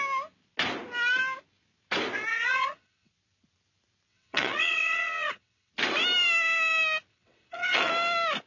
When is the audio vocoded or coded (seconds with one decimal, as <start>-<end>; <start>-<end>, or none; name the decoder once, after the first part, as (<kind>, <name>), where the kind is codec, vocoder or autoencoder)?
2.3-3.1 (vocoder, WaveNeXt); 4.1-5.7; 7.1-7.9

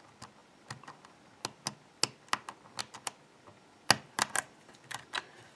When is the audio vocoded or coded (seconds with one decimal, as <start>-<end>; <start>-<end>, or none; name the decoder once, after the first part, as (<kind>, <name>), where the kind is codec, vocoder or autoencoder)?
none

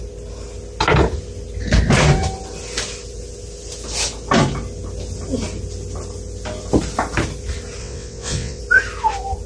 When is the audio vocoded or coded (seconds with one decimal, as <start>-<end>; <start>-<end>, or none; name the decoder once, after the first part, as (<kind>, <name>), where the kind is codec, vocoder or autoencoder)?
7.8-8.6 (vocoder, WaveNeXt)

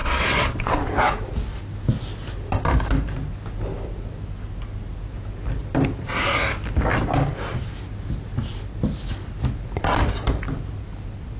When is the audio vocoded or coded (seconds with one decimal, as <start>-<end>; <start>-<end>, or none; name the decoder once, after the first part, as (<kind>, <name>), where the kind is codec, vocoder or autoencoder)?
0.0-0.9 (vocoder, WaveNeXt)

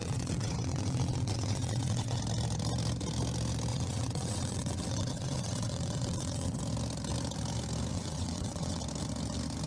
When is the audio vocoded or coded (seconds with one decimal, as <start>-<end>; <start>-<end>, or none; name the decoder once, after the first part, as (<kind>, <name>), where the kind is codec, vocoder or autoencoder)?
0.0-2.2 (vocoder, WaveNeXt); 3.7-6.6; 7.9-8.8

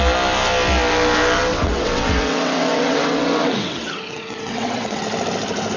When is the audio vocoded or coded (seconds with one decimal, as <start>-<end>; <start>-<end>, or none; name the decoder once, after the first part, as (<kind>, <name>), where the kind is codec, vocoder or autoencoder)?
1.5-5.0 (vocoder, WaveNeXt)

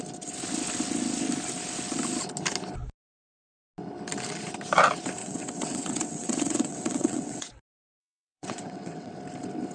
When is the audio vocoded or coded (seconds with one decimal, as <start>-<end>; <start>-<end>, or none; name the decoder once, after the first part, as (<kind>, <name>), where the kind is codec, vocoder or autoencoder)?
5.2-7.6 (vocoder, WaveNeXt); 8.0-9.1

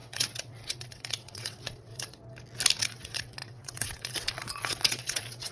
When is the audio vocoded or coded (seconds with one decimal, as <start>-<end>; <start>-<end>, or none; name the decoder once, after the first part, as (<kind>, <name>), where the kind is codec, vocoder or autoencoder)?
0.0-2.2 (vocoder, WaveNeXt); 2.8-5.5